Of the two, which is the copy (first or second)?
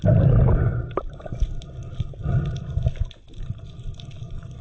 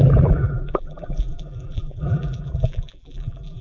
second